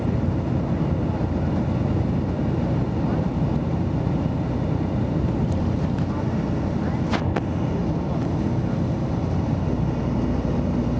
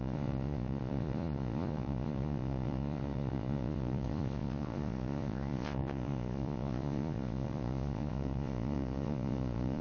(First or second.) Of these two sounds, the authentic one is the first